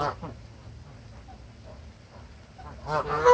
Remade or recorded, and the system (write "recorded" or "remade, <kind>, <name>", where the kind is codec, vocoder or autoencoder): recorded